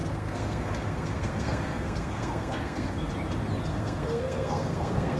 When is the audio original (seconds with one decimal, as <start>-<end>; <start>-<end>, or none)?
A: 3.1-3.7

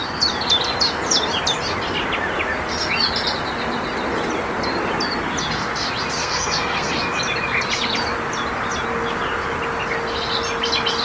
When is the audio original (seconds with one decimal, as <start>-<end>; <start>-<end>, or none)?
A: 0.0-6.2; 7.0-11.0

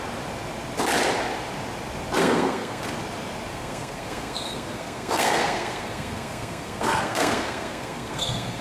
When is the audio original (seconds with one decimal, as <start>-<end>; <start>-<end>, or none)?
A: 0.0-2.2; 2.8-3.5

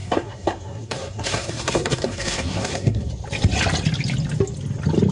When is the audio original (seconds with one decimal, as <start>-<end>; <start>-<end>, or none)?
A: 3.1-5.1

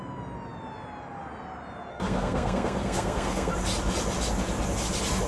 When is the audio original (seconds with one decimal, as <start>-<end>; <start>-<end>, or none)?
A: 0.0-1.9; 3.5-5.3

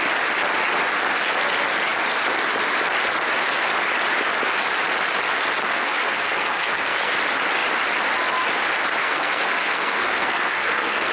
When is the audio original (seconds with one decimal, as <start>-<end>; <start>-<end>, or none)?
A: 0.0-5.6; 7.1-9.0

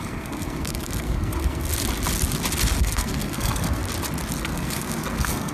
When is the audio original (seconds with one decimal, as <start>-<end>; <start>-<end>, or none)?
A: 1.7-2.8; 3.8-4.4